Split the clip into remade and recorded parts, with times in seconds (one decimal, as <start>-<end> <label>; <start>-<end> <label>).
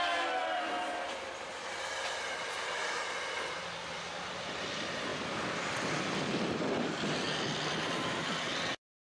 0.0-0.4 recorded; 0.4-1.5 remade; 1.5-5.1 recorded; 5.1-8.2 remade; 8.2-9.0 recorded